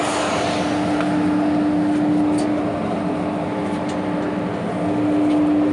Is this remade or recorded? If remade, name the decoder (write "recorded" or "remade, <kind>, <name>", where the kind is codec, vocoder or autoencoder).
recorded